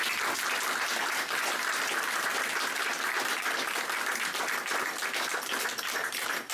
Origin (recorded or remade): recorded